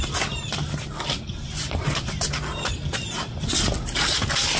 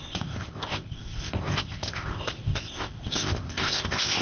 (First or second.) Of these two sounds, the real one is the first